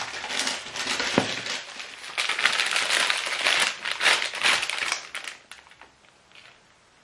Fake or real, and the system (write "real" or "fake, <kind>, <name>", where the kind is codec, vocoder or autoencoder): real